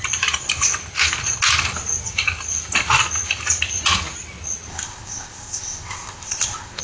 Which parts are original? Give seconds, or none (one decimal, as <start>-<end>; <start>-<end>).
0.0-4.7